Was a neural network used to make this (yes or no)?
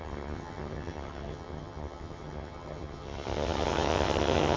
yes